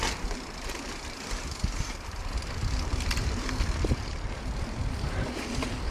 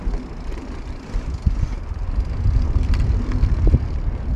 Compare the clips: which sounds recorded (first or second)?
second